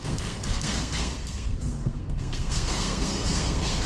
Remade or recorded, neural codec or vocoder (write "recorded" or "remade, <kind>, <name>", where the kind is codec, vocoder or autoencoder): remade, codec, SNAC